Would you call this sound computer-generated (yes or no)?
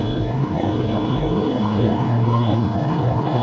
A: yes